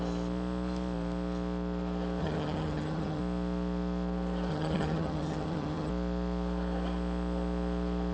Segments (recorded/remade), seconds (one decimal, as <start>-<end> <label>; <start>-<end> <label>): 0.0-2.2 recorded; 2.2-3.2 remade; 3.2-4.5 recorded; 4.5-5.9 remade; 5.9-8.1 recorded